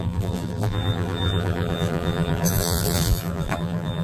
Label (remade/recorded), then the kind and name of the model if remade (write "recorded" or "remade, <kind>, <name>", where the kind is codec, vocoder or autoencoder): remade, vocoder, BigVGAN v2